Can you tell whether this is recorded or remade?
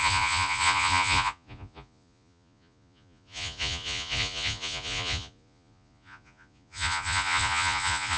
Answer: remade